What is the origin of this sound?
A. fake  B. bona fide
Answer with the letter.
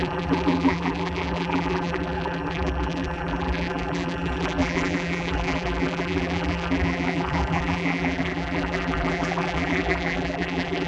A